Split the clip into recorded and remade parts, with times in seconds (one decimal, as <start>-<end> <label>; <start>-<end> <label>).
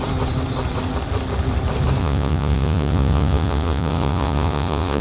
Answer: 0.0-2.0 recorded; 2.0-5.0 remade